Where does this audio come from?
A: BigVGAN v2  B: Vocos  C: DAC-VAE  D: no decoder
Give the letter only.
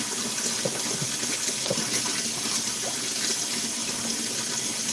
D